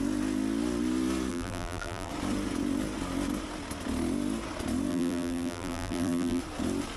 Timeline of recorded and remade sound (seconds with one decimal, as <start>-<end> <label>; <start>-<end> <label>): 0.0-1.3 recorded; 1.3-2.1 remade; 2.1-4.9 recorded; 4.9-6.4 remade; 6.4-7.0 recorded